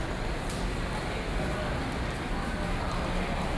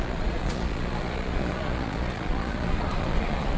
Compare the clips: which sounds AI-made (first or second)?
second